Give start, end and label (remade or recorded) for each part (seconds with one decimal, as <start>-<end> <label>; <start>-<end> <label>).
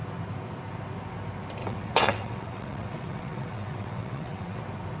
0.0-1.6 recorded; 1.6-4.6 remade; 4.6-5.0 recorded